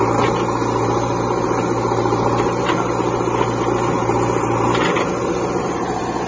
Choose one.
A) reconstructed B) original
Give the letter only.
B